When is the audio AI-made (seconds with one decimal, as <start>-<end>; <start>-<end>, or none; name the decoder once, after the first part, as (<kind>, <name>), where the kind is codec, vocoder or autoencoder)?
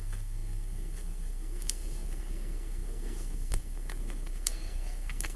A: 0.0-5.4 (codec, SNAC)